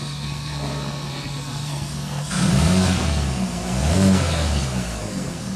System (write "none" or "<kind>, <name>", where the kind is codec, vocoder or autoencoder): codec, SNAC